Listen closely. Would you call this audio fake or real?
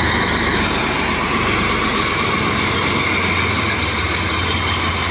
real